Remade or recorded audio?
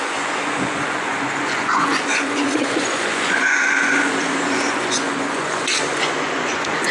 remade